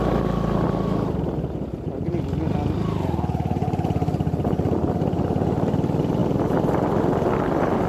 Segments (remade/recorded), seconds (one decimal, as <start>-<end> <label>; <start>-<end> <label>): 0.0-7.9 recorded